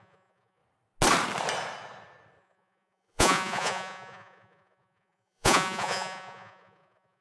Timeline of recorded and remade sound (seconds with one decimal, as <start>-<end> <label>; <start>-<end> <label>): 0.0-0.6 remade; 0.6-2.4 recorded; 2.4-7.2 remade